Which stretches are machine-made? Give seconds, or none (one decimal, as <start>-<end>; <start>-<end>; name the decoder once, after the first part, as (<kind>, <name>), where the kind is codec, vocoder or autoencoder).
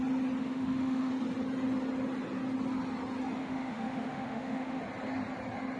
0.4-1.1 (autoencoder, DAC-VAE); 3.4-4.8